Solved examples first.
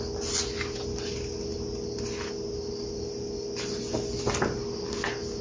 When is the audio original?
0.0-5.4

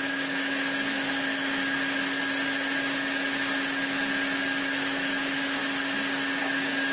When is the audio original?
1.3-4.6; 5.6-6.4